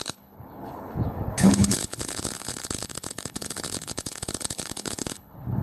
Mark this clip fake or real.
fake